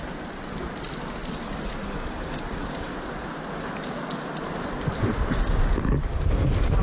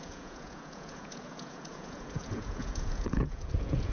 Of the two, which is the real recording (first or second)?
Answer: first